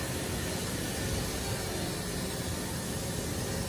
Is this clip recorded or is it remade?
recorded